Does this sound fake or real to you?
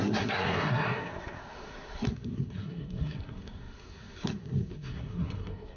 fake